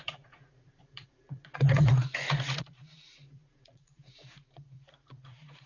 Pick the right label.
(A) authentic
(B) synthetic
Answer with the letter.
B